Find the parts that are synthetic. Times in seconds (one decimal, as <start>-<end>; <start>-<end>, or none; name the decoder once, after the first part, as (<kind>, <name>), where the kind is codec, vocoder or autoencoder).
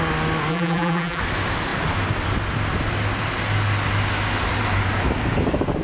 0.5-1.2 (vocoder, BigVGAN v2)